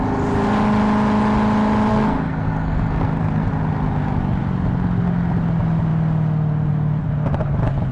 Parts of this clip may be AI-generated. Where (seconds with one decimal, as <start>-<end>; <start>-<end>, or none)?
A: 1.9-3.5